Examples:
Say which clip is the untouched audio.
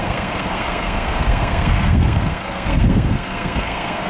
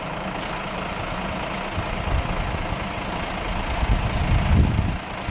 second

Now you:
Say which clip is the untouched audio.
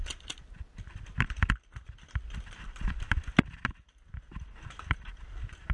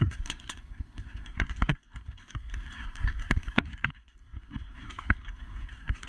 first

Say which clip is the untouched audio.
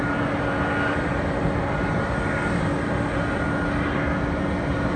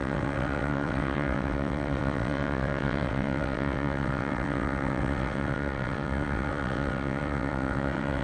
first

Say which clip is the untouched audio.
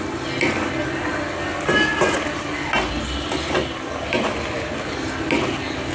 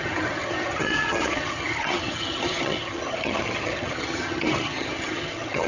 first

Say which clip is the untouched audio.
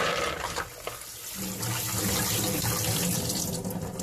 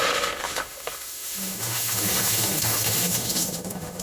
first